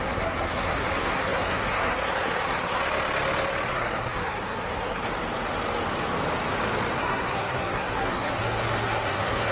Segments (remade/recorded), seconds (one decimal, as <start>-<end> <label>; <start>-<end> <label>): 0.0-2.8 remade; 2.8-3.7 recorded; 3.7-5.0 remade; 5.0-7.0 recorded; 7.0-9.5 remade